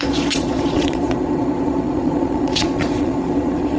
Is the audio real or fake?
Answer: fake